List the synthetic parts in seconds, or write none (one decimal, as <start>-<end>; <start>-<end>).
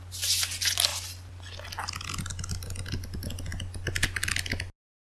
none